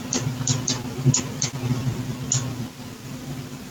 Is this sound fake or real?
real